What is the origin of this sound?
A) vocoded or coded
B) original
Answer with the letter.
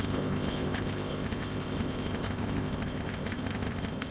A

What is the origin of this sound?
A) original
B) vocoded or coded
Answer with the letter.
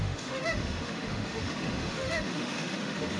B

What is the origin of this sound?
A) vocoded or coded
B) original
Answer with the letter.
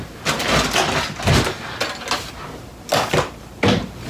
B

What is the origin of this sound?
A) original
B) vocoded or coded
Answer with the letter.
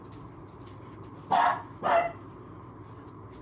A